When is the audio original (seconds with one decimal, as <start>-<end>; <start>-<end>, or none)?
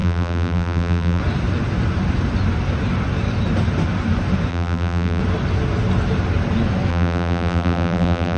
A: 1.2-4.5; 5.2-6.9